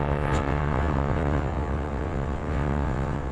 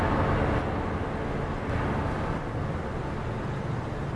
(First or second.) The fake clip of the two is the first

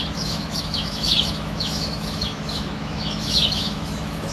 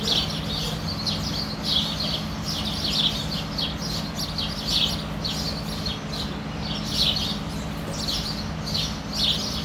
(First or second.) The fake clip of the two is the first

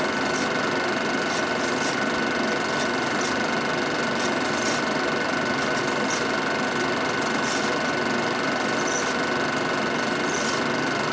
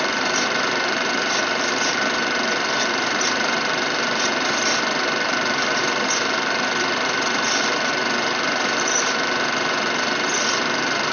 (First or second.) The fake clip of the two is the second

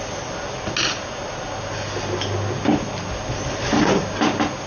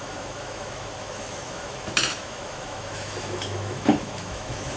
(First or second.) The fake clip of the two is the second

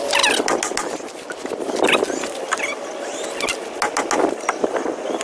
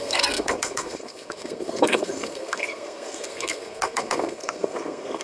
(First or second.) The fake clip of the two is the second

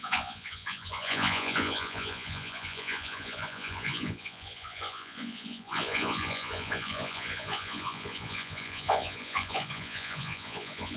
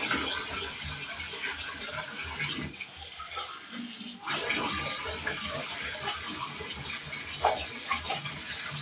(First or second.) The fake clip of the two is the first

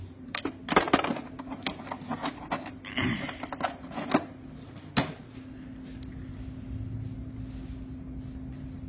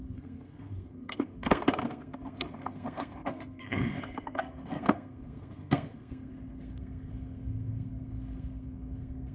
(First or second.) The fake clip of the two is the second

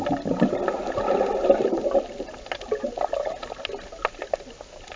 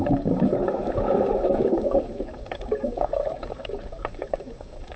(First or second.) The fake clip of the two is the second